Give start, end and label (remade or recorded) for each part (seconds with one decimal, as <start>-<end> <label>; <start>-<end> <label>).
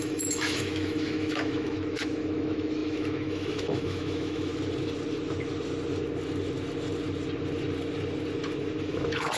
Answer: 0.0-4.5 remade; 4.5-8.8 recorded; 8.8-9.4 remade